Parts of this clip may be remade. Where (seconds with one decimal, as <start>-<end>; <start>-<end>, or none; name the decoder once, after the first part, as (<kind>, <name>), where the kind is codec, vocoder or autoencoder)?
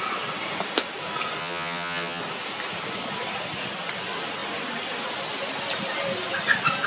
1.4-2.2 (vocoder, HiFi-GAN)